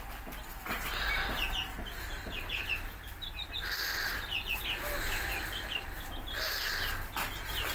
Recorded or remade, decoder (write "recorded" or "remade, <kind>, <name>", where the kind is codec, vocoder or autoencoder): recorded